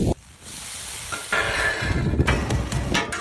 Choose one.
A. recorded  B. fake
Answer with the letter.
A